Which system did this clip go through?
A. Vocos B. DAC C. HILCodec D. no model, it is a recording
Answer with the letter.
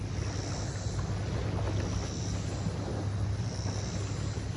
D